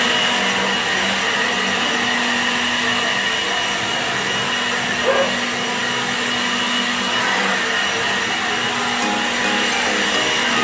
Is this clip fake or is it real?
real